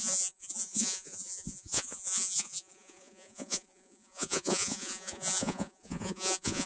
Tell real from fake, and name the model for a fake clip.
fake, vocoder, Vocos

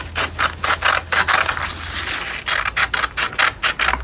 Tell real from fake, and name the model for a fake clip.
real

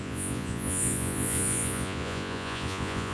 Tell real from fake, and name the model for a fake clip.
fake, vocoder, Vocos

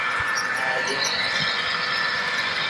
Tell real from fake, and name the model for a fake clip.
fake, vocoder, Vocos